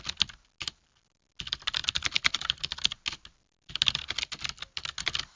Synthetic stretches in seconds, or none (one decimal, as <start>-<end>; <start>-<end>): none